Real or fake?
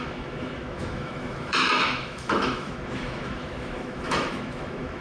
fake